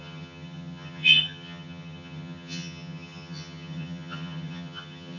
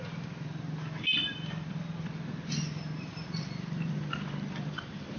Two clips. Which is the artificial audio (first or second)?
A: first